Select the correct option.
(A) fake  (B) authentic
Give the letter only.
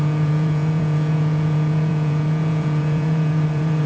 A